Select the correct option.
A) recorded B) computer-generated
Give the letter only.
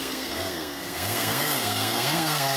B